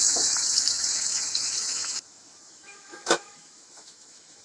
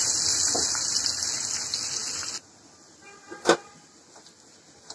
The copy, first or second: first